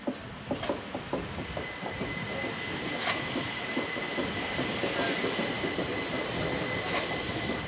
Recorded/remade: recorded